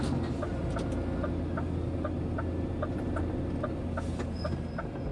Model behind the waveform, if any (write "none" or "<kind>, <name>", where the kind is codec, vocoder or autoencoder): none